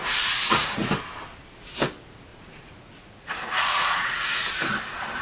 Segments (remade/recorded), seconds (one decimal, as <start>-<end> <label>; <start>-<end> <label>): 0.0-0.9 remade; 0.9-2.3 recorded; 2.3-4.5 remade; 4.5-5.2 recorded